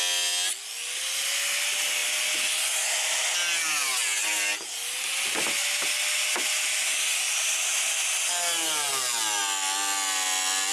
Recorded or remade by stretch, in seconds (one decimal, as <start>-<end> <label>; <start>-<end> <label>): 0.0-10.7 recorded